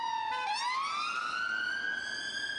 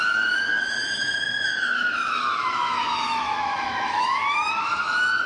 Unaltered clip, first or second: first